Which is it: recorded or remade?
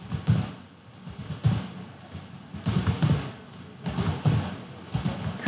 recorded